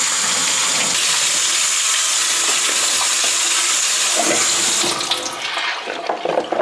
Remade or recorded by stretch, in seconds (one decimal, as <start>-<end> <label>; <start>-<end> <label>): 0.0-6.6 recorded